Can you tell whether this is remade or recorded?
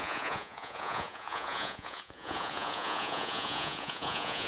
remade